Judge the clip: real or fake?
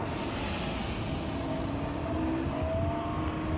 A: real